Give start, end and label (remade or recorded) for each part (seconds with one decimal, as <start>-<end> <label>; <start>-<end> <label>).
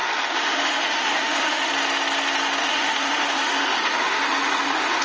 0.0-1.7 remade; 1.7-2.6 recorded; 2.6-5.0 remade